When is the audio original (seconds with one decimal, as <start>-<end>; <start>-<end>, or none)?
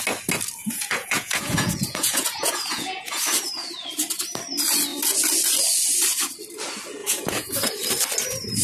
0.0-0.6; 3.2-7.0; 7.7-8.6